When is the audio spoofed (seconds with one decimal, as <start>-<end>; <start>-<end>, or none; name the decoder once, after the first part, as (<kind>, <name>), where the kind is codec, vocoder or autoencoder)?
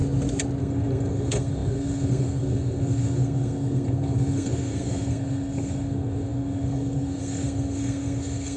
0.6-8.6 (codec, SNAC)